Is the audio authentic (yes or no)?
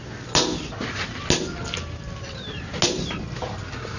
yes